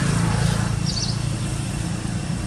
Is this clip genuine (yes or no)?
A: yes